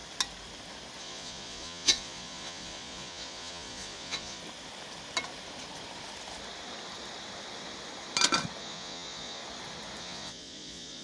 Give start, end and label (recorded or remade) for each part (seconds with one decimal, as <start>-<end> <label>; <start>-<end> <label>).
0.0-1.0 recorded; 1.0-4.4 remade; 4.4-8.6 recorded; 8.6-9.4 remade; 9.4-10.0 recorded; 10.0-11.0 remade